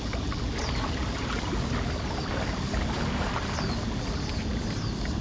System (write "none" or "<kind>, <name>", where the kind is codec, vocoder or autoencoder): none